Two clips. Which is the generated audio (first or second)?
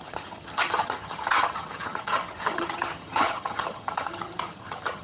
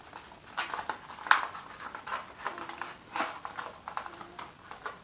first